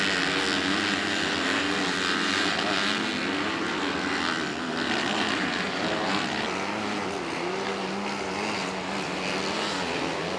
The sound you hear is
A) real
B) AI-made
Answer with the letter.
A